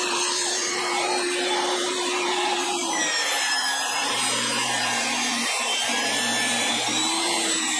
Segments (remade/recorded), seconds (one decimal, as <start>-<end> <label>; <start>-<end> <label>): 0.0-7.8 remade